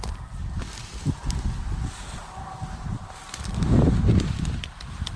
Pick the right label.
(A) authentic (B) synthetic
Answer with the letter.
A